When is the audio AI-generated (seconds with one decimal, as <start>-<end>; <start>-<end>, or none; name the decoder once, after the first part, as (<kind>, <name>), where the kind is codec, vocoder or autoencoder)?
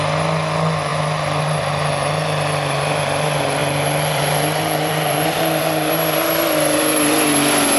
0.9-1.7 (vocoder, BigVGAN v2); 3.6-5.9